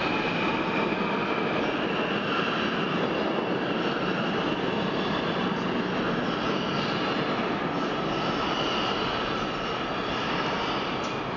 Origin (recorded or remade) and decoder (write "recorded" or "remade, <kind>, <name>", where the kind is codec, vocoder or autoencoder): recorded